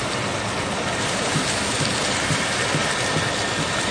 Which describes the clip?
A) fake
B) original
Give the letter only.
B